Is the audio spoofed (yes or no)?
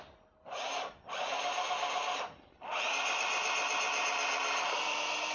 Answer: no